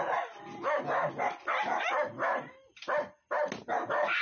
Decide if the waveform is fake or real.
real